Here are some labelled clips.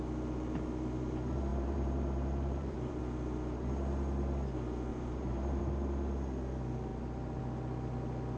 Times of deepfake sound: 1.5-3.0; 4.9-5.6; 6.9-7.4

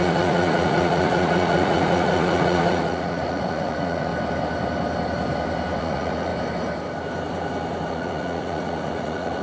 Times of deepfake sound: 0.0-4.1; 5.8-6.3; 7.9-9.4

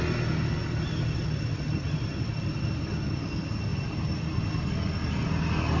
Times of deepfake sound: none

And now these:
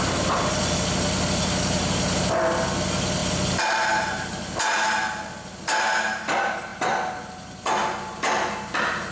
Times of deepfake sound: none